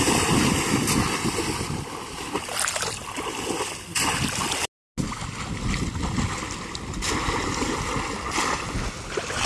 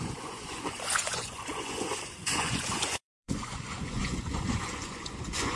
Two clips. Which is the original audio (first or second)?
first